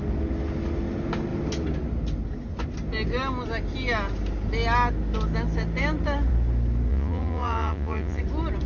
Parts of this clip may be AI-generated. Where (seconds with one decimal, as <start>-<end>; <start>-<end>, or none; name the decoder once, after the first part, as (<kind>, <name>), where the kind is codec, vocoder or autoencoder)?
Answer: 6.9-8.2 (vocoder, Vocos)